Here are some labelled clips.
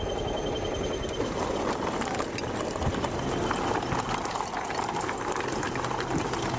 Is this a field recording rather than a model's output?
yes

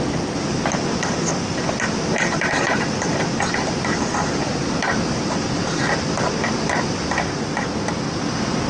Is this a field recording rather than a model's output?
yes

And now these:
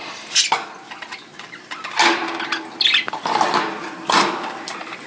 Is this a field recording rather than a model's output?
yes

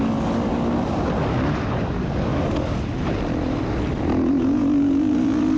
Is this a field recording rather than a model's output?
yes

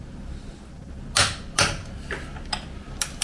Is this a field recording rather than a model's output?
yes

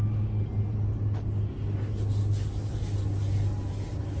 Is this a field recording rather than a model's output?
yes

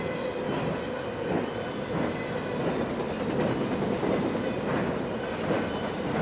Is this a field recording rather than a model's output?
yes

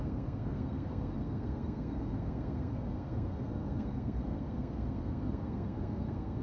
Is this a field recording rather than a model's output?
no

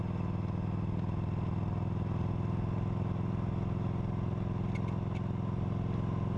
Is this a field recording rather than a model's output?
yes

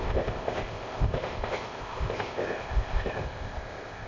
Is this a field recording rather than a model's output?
no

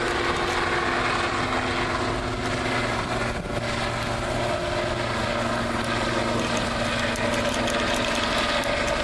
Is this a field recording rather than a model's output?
yes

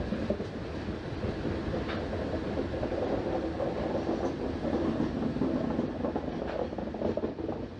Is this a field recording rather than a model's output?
yes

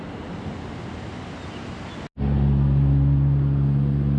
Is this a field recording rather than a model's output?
yes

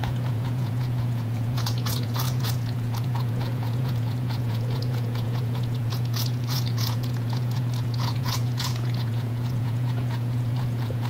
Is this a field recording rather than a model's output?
no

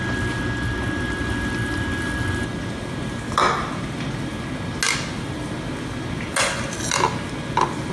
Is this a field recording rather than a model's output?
yes